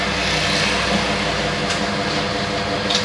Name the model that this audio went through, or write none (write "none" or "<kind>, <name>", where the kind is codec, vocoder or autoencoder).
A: vocoder, BigVGAN v2